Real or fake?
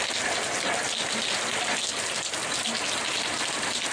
real